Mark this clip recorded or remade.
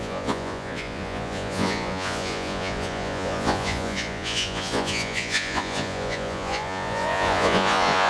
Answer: remade